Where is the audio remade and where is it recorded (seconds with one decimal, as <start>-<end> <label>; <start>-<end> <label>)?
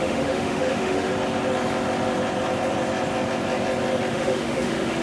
0.0-1.1 remade; 1.1-4.1 recorded; 4.1-5.0 remade